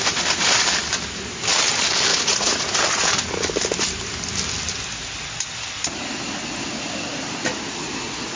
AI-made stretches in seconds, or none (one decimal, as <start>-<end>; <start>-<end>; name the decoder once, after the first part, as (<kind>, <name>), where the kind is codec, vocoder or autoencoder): 2.1-3.1 (vocoder, Vocos)